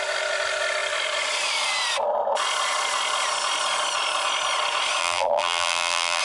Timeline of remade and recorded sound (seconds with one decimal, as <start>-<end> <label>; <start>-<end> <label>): 0.0-5.0 recorded; 5.0-6.2 remade